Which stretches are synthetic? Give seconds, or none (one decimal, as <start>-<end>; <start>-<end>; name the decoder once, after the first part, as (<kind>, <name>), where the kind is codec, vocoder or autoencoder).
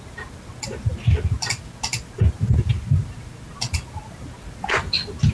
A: none